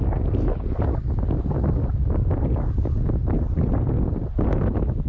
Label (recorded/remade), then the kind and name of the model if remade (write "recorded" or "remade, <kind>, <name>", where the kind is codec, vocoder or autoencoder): recorded